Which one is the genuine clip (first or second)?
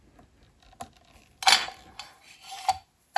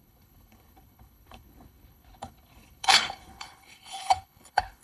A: first